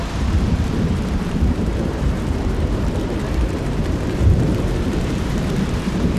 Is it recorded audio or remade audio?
remade